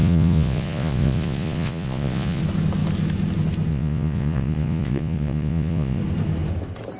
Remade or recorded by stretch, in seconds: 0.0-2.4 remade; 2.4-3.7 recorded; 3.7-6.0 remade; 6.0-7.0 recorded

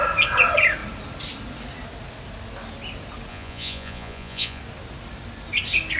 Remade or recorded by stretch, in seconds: 0.0-3.3 recorded; 3.3-4.6 remade; 4.6-6.0 recorded

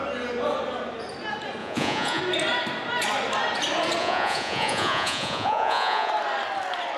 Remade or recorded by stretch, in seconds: 0.0-1.6 recorded; 1.6-2.2 remade; 2.2-4.0 recorded; 4.0-6.1 remade; 6.1-7.0 recorded

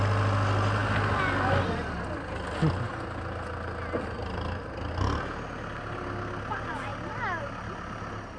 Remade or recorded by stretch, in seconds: 0.0-8.4 recorded

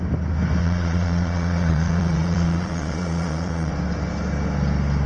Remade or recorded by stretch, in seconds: 0.0-0.6 recorded; 0.6-3.7 remade; 3.7-5.1 recorded

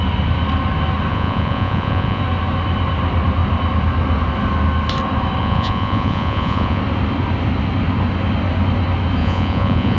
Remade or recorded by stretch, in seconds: 0.0-1.1 recorded; 1.1-2.2 remade; 2.2-5.4 recorded; 5.4-6.8 remade; 6.8-9.2 recorded; 9.2-10.0 remade